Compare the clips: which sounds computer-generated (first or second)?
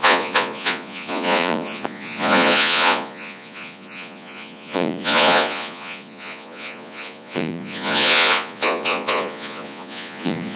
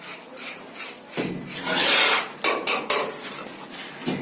first